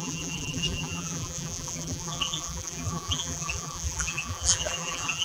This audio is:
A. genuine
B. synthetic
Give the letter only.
B